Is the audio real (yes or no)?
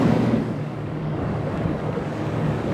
no